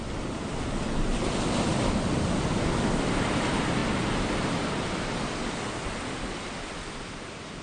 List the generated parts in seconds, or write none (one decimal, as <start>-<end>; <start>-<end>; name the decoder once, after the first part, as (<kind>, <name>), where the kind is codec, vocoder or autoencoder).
0.0-0.5 (vocoder, BigVGAN v2); 1.7-3.8; 4.9-7.6